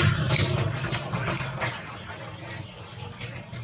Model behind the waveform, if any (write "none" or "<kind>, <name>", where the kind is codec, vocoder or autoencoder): none